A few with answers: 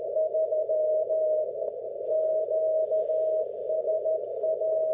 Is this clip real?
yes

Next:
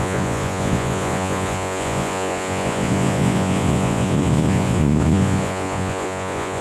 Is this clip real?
no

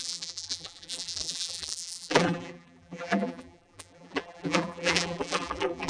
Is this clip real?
no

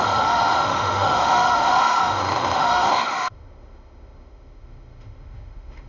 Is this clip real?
no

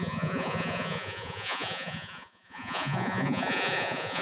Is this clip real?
no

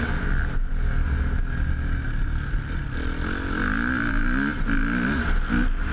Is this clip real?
yes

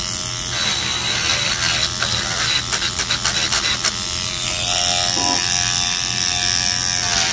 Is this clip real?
yes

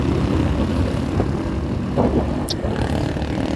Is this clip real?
yes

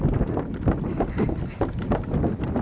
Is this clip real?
yes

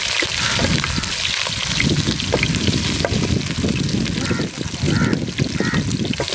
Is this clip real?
yes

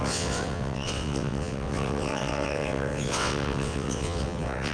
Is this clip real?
no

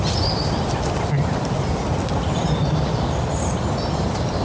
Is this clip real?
yes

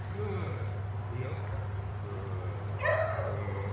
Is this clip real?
yes